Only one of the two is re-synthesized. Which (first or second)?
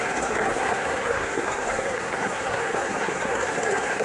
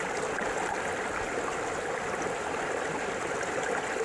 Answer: first